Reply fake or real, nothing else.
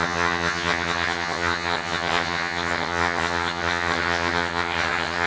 fake